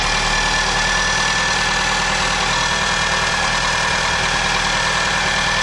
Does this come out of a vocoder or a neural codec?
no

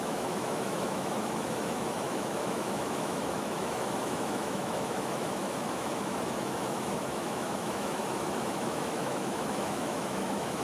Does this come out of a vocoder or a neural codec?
yes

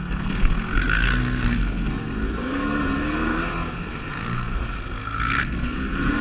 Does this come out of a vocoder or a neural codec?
yes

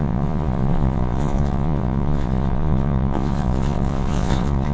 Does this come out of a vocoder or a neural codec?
yes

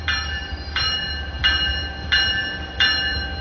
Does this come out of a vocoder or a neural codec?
yes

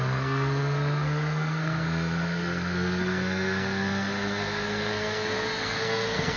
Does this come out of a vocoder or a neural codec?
yes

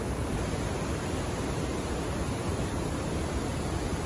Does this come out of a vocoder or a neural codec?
no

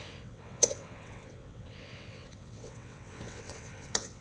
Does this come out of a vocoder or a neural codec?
yes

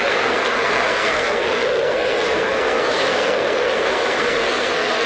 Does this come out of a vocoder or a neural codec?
yes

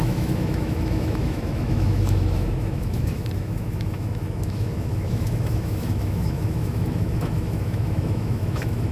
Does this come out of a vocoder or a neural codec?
yes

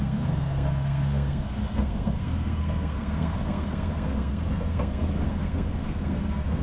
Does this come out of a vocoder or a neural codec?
yes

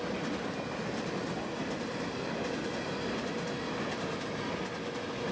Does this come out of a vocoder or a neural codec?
no